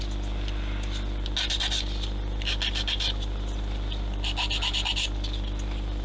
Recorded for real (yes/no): yes